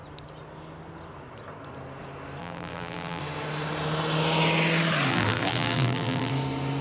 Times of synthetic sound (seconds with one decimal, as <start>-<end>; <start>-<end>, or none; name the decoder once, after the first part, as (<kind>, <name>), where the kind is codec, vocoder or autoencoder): 2.4-3.2 (vocoder, BigVGAN v2); 5.1-6.3